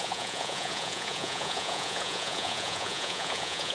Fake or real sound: fake